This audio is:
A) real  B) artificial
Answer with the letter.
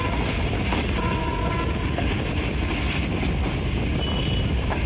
A